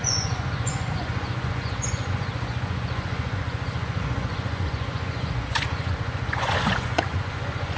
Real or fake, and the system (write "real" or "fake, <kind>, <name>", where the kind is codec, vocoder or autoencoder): fake, vocoder, Vocos